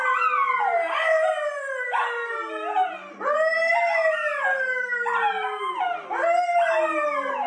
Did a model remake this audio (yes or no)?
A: no